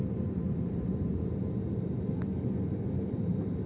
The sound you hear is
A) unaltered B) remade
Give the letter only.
A